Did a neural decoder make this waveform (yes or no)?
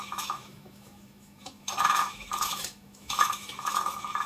yes